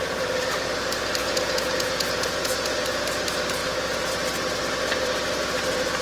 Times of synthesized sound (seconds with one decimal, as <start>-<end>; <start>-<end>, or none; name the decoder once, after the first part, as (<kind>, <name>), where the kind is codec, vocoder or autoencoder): 1.2-2.8 (vocoder, Vocos); 3.6-4.1